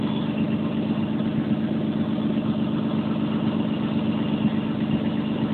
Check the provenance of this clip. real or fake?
real